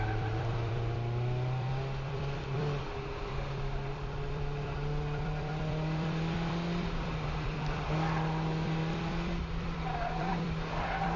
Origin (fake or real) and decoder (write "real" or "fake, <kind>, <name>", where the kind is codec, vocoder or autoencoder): fake, vocoder, BigVGAN v2